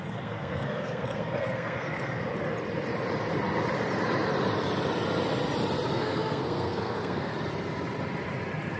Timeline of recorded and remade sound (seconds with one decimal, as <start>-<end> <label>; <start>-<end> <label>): 0.0-2.2 remade; 2.2-5.9 recorded; 5.9-7.3 remade; 7.3-8.8 recorded